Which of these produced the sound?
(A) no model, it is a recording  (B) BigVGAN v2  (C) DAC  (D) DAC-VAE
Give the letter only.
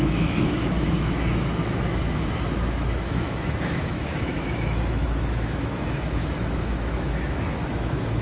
D